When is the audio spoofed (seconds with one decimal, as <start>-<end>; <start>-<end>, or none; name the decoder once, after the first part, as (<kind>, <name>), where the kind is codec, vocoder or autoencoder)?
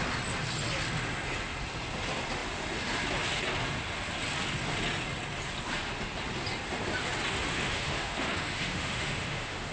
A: 7.3-9.7 (autoencoder, DAC-VAE)